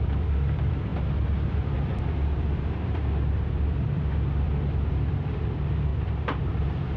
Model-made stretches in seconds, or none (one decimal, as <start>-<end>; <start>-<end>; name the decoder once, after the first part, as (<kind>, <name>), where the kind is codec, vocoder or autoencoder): 0.0-0.9 (vocoder, BigVGAN v2); 2.0-5.9; 6.4-7.0